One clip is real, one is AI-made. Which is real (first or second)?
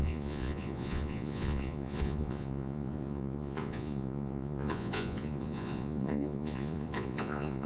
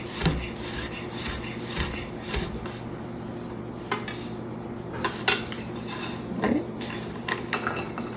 second